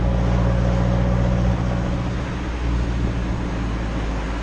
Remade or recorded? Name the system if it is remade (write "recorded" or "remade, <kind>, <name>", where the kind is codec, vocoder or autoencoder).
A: recorded